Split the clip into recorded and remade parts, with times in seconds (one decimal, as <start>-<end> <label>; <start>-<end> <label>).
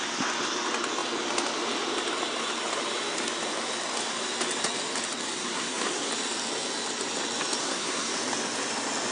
0.0-5.3 recorded; 5.3-6.1 remade; 6.1-7.6 recorded; 7.6-8.1 remade; 8.1-9.1 recorded